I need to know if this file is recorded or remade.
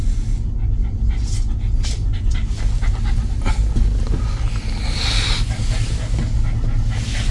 recorded